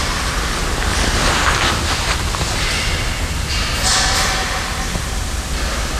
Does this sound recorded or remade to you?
recorded